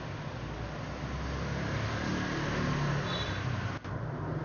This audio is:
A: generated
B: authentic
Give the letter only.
B